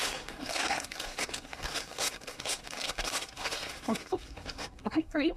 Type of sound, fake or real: fake